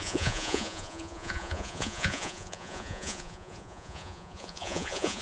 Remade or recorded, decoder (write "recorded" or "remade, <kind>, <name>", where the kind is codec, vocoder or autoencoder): remade, vocoder, Vocos